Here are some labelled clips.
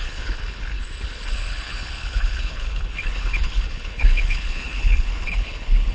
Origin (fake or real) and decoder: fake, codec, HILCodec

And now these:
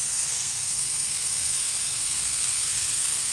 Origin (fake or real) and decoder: fake, codec, SNAC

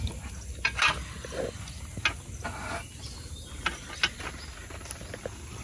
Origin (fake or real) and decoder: real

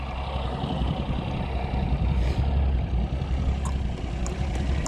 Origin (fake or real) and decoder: real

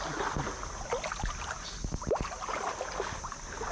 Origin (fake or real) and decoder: real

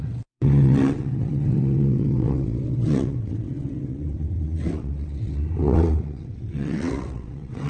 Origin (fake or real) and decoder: fake, vocoder, WaveNeXt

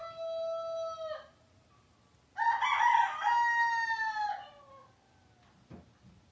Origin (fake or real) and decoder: real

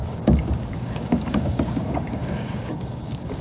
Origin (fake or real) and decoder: fake, codec, DAC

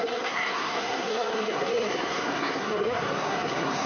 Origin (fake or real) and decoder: fake, codec, SNAC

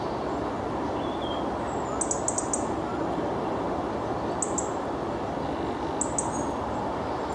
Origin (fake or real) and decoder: real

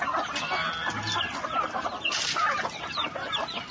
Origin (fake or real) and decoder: real